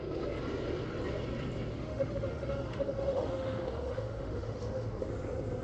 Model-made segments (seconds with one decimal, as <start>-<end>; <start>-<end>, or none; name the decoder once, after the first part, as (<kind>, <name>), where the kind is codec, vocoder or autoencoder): 1.7-5.1 (autoencoder, DAC-VAE)